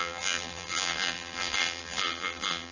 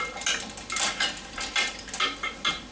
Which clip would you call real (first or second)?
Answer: second